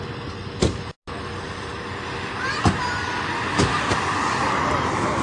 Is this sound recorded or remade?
recorded